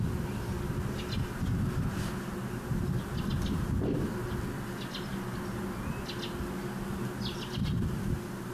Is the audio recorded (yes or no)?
yes